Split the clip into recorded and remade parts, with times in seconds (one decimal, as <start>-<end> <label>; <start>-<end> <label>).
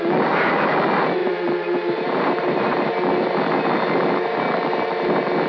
0.0-1.2 recorded; 1.2-2.9 remade; 2.9-5.5 recorded